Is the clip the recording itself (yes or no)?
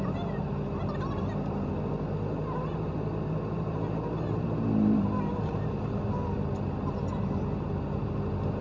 yes